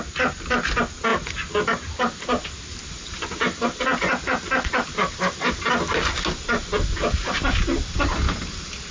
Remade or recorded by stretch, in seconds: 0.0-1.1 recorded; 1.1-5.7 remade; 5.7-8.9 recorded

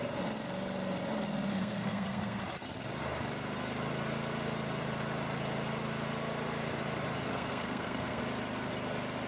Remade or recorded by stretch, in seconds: 0.0-1.5 recorded; 1.5-2.4 remade; 2.4-7.3 recorded; 7.3-8.2 remade; 8.2-9.3 recorded

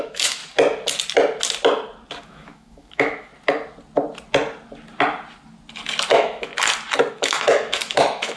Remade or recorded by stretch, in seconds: 0.0-0.4 remade; 0.4-2.2 recorded; 2.2-3.3 remade; 3.3-6.1 recorded; 6.1-6.5 remade; 6.5-7.1 recorded; 7.1-8.4 remade

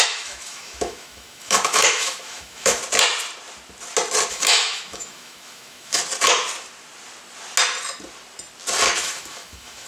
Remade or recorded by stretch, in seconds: 0.0-2.8 remade; 2.8-4.3 recorded; 4.3-6.0 remade; 6.0-9.0 recorded; 9.0-9.9 remade

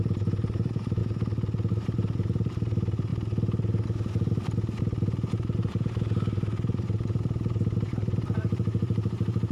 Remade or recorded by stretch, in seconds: 0.0-1.0 remade; 1.0-1.7 recorded; 1.7-3.1 remade; 3.1-4.8 recorded; 4.8-9.5 remade